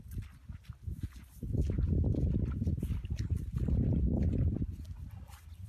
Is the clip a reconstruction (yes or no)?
no